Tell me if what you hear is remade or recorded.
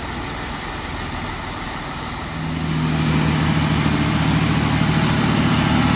recorded